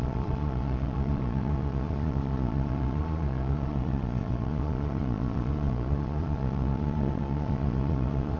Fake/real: fake